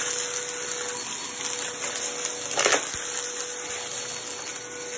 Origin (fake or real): real